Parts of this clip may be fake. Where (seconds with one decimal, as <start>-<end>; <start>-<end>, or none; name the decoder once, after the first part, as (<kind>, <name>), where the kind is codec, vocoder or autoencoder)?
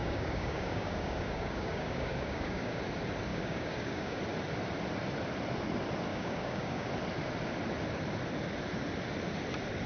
0.0-2.8 (codec, DAC); 3.3-4.2; 6.1-6.9